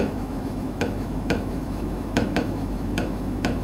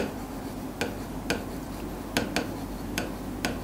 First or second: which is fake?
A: first